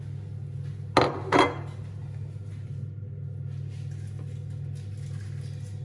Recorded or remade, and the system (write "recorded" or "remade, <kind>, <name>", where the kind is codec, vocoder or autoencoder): recorded